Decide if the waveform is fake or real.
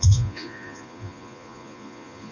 fake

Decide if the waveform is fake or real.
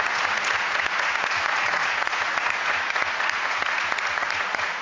fake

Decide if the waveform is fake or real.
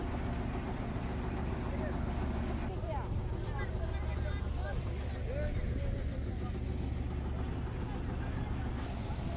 real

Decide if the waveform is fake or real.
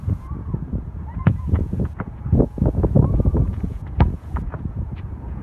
fake